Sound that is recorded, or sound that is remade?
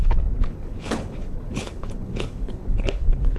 remade